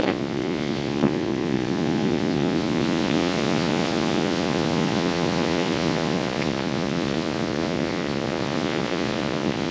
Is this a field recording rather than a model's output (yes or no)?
no